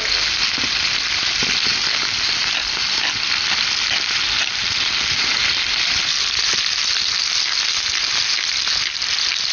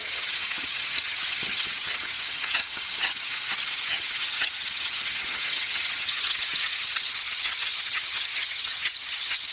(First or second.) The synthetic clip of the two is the second